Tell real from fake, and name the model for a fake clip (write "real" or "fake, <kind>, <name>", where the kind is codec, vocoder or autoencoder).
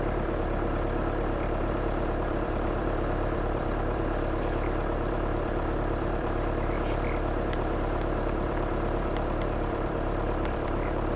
fake, vocoder, BigVGAN v2